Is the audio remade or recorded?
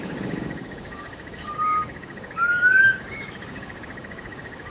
remade